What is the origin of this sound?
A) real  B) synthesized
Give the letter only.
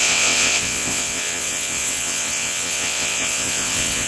B